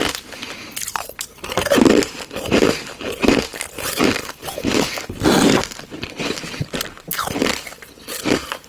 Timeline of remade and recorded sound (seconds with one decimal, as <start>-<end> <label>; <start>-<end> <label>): 0.0-8.7 recorded